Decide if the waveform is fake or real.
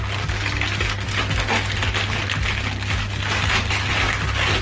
real